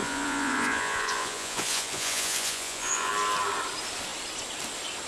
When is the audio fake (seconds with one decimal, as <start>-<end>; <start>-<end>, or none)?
0.0-3.1